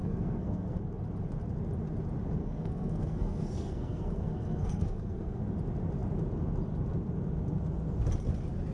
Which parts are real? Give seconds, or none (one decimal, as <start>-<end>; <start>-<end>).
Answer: 0.8-2.4; 5.4-8.7